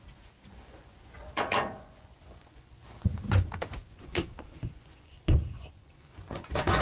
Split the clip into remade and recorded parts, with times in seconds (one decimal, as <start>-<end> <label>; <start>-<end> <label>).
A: 0.0-6.8 remade